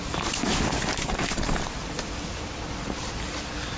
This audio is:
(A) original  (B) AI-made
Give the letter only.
A